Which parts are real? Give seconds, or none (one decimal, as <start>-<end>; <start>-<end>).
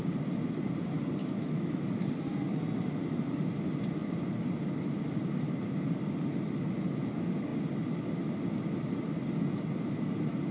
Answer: 0.0-1.2; 1.8-10.5